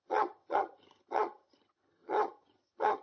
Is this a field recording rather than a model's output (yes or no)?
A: no